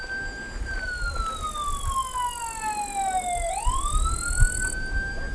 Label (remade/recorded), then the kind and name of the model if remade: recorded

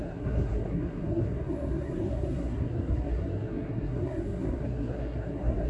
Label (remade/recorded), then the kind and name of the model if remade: remade, codec, SNAC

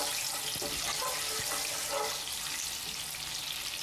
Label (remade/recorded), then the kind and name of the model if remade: recorded